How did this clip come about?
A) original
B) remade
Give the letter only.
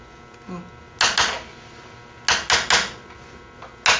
A